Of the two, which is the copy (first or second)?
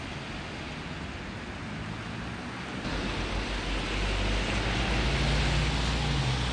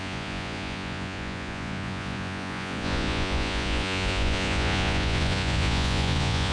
second